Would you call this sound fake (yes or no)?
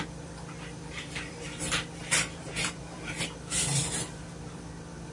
yes